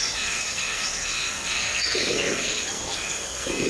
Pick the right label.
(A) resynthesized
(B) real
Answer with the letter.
A